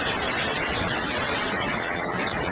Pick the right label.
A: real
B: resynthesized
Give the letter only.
B